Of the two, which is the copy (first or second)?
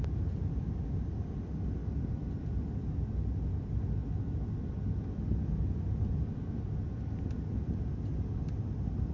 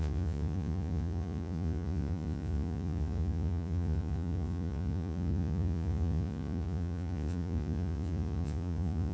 second